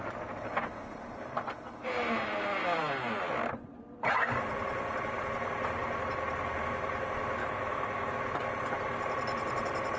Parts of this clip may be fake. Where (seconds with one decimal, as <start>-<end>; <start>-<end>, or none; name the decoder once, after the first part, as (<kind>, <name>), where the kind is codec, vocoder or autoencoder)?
7.4-8.1 (autoencoder, DAC-VAE)